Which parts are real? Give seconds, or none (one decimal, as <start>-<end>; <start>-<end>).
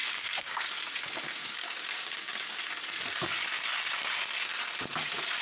0.7-1.4; 2.6-5.4